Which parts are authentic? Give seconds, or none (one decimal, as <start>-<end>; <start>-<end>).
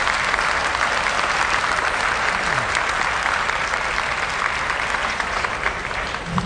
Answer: 0.0-5.0; 5.5-6.5